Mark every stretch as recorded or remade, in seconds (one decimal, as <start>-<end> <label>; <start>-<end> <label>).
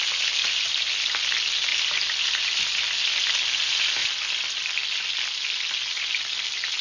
0.0-6.8 recorded